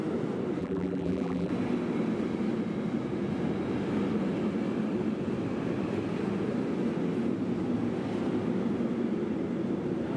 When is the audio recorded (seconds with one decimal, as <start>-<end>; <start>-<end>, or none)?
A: 0.0-0.6; 1.5-10.2